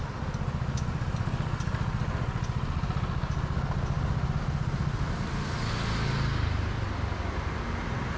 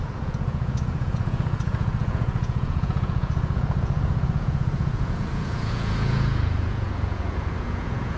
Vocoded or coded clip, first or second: second